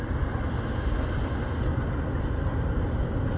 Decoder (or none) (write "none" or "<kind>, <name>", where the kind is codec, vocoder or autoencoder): none